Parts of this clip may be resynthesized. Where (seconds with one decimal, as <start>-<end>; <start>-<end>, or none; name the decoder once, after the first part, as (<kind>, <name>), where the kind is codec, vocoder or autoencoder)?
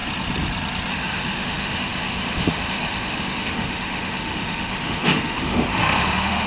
0.9-6.5 (autoencoder, DAC-VAE)